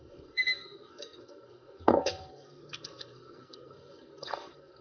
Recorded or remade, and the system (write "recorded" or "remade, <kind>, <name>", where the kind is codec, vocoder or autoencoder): remade, codec, SNAC